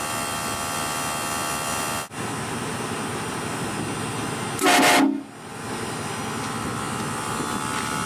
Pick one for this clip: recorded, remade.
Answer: recorded